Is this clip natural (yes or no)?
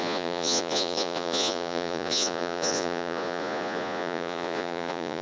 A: no